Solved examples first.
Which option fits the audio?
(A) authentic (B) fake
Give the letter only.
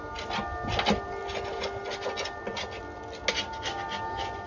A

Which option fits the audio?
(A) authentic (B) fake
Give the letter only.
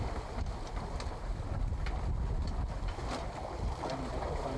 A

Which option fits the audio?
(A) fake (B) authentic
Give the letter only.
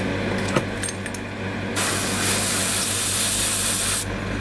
B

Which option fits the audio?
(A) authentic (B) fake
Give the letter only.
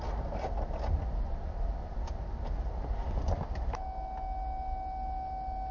A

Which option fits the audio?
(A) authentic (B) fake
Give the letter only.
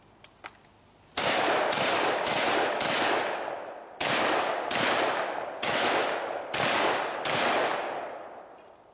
A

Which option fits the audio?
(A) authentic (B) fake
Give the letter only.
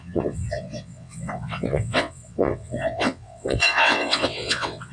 B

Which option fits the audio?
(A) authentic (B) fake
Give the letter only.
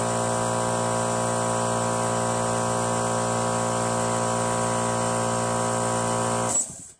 A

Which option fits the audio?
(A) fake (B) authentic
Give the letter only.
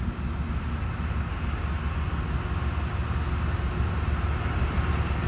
B